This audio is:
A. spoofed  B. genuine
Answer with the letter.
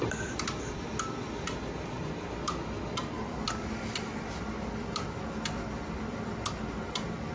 B